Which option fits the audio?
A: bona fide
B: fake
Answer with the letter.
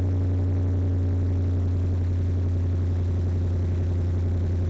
A